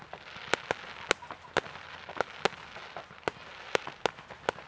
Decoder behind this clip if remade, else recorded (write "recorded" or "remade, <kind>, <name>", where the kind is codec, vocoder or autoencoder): recorded